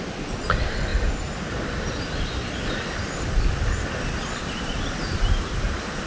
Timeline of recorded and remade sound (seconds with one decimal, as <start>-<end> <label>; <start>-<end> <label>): 0.0-0.9 remade; 0.9-4.4 recorded; 4.4-6.1 remade